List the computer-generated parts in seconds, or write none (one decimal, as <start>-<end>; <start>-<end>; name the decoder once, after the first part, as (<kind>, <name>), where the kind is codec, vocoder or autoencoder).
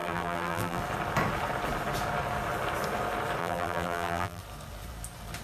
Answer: 0.0-0.8 (vocoder, BigVGAN v2); 3.4-4.4